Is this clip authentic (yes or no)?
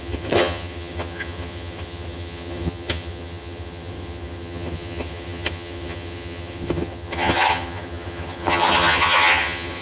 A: no